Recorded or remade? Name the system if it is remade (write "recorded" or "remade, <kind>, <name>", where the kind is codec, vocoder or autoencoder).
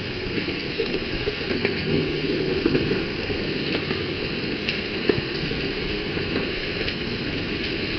remade, codec, SNAC